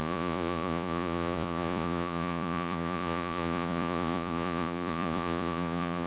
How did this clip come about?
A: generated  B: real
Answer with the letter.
A